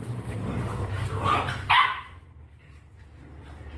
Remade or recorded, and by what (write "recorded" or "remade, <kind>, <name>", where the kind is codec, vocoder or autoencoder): recorded